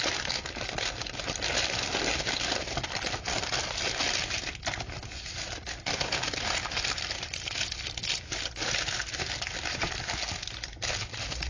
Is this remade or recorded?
recorded